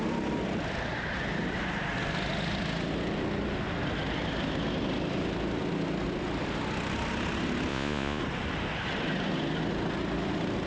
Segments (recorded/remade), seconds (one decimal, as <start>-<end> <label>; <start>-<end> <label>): 0.0-7.7 recorded; 7.7-8.2 remade; 8.2-10.7 recorded